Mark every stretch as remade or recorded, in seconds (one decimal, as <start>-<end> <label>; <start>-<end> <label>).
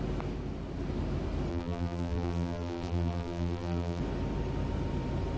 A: 0.0-1.5 recorded; 1.5-4.0 remade; 4.0-5.4 recorded